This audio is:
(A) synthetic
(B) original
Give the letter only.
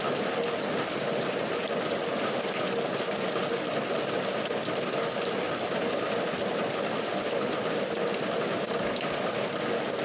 B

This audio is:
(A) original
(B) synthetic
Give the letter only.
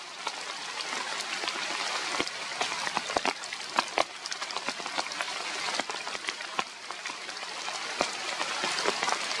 A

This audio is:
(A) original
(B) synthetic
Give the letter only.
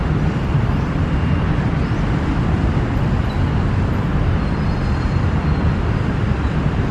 A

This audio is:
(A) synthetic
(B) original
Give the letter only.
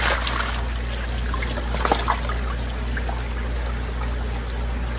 B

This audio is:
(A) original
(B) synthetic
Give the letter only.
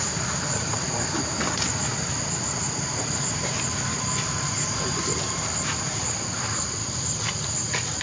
B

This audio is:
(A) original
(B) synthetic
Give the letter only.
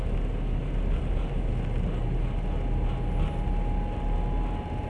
A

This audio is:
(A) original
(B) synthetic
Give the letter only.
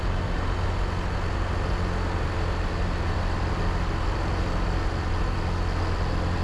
A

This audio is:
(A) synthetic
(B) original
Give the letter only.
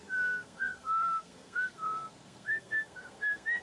A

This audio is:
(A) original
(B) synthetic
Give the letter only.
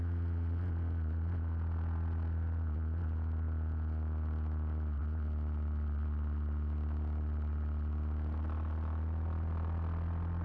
A